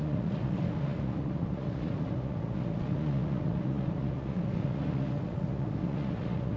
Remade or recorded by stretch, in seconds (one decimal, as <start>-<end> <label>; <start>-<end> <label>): 0.0-6.6 remade